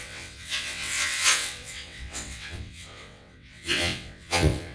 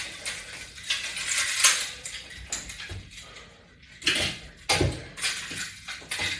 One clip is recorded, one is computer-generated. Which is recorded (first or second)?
second